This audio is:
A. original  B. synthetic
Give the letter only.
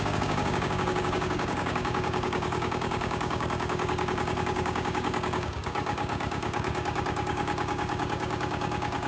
B